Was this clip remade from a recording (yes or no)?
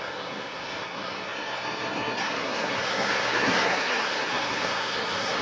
yes